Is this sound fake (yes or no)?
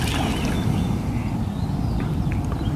no